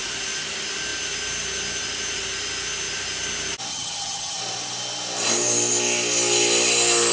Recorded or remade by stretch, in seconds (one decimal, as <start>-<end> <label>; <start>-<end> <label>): 0.0-3.7 recorded; 3.7-4.4 remade; 4.4-7.1 recorded